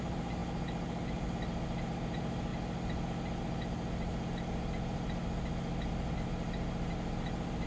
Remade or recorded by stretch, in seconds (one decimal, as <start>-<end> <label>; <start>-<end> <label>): 0.0-7.7 recorded